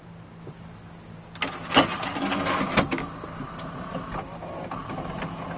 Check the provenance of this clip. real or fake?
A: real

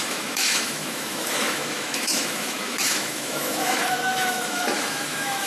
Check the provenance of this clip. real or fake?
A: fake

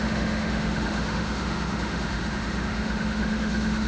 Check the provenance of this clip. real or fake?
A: fake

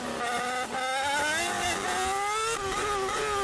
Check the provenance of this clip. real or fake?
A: real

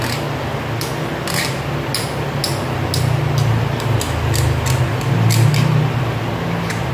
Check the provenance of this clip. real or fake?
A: real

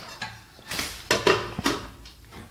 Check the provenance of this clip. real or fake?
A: real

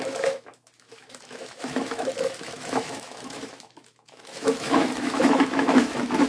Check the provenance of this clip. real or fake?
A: fake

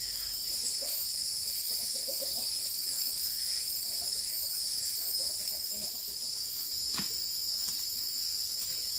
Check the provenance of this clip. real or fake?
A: fake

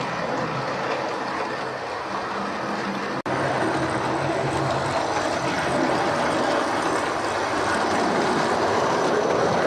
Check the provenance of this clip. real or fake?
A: real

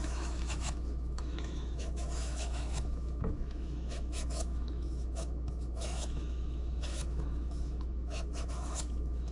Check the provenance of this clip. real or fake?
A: fake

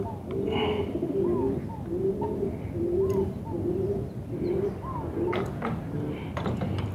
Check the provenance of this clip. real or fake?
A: real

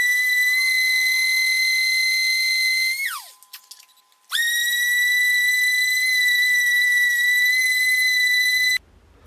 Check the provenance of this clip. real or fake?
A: real